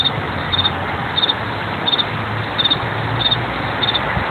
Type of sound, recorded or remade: recorded